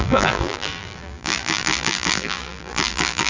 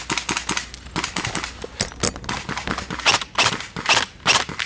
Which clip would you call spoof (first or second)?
first